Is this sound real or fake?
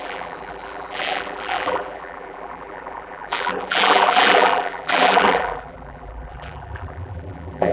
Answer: fake